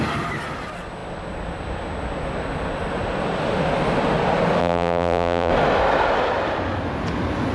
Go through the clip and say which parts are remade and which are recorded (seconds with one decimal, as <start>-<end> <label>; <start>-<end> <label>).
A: 0.0-4.6 recorded; 4.6-5.5 remade; 5.5-7.5 recorded